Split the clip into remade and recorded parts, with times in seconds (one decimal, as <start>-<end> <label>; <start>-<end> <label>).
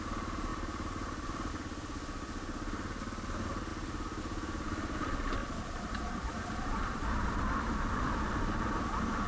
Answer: 0.0-0.5 recorded; 0.5-1.5 remade; 1.5-3.7 recorded; 3.7-4.2 remade; 4.2-5.4 recorded; 5.4-8.1 remade; 8.1-9.3 recorded